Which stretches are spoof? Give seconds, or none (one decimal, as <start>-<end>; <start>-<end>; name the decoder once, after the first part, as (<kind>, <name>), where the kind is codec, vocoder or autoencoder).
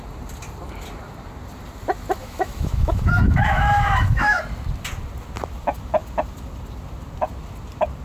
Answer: 2.2-4.4 (autoencoder, DAC-VAE)